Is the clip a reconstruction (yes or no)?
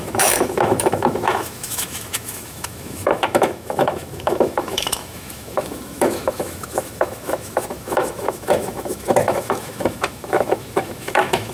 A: yes